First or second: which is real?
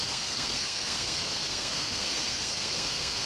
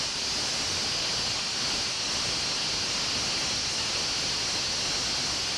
second